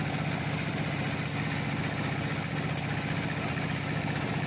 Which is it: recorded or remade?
recorded